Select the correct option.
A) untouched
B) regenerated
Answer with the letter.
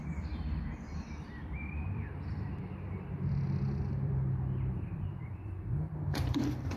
B